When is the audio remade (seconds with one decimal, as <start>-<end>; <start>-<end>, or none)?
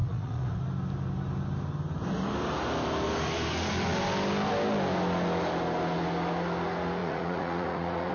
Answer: 0.0-0.6; 7.0-8.1